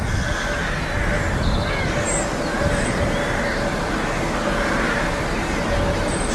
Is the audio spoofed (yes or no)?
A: no